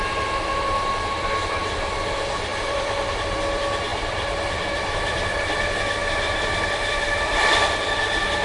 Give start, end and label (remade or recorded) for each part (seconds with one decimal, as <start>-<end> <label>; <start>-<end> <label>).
0.0-8.4 remade

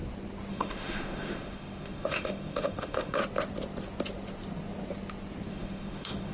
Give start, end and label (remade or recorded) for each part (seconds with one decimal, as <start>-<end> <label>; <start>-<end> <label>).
0.0-0.5 recorded; 0.5-3.2 remade; 3.2-5.5 recorded; 5.5-6.3 remade

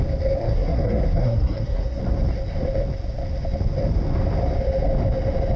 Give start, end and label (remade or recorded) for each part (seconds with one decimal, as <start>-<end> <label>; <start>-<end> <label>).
0.0-0.4 recorded; 0.4-2.0 remade; 2.0-5.6 recorded

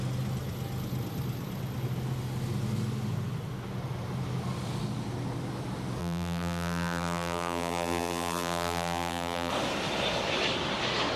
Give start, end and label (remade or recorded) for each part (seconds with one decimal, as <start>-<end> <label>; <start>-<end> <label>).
0.0-6.0 recorded; 6.0-9.5 remade; 9.5-11.2 recorded

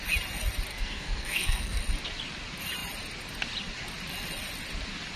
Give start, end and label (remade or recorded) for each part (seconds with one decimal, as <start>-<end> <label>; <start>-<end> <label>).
0.0-0.7 recorded; 0.7-1.8 remade; 1.8-5.2 recorded

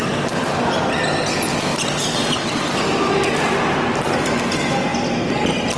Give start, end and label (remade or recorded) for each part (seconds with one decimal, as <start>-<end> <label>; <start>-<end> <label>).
0.0-5.8 recorded

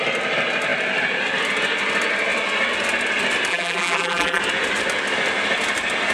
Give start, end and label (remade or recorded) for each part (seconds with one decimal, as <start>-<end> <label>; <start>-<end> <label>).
0.0-3.5 recorded; 3.5-4.4 remade; 4.4-6.1 recorded